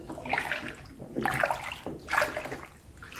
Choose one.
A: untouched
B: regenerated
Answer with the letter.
A